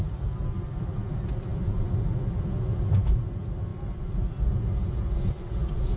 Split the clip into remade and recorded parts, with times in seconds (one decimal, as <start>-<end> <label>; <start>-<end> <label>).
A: 0.0-6.0 recorded